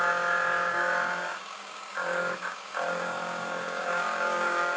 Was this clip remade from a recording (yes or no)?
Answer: yes